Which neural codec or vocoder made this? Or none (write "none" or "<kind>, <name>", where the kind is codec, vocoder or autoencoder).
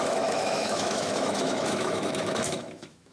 autoencoder, DAC-VAE